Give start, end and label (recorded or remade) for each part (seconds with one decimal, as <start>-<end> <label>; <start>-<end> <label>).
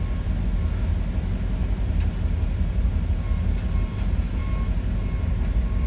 0.0-5.9 recorded